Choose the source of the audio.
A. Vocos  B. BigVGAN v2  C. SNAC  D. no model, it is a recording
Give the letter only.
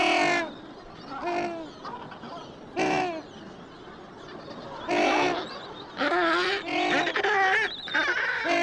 D